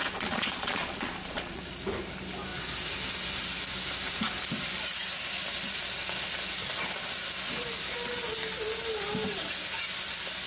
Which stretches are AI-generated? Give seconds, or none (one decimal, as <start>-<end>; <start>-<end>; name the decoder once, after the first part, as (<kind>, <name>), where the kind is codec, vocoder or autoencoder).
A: 0.0-1.6 (vocoder, Vocos)